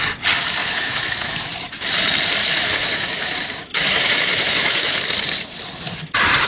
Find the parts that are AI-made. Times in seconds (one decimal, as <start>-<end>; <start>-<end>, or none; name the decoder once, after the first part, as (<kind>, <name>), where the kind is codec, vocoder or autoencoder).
0.6-1.5 (autoencoder, DAC-VAE); 2.4-5.0